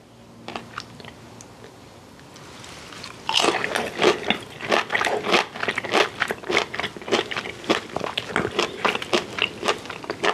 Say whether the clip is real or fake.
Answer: real